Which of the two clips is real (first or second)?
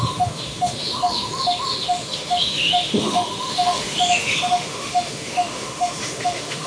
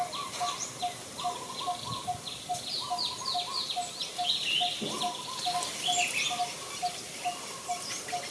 second